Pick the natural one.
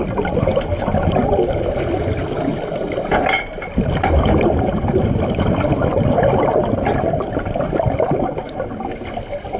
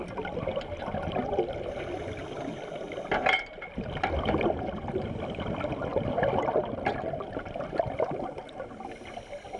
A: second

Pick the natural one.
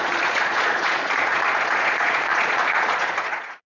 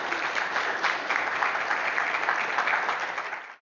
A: second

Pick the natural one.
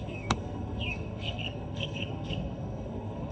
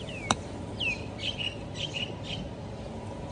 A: second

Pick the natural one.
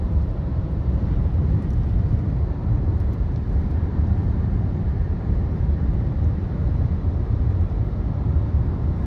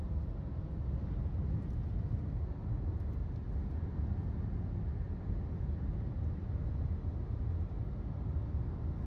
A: second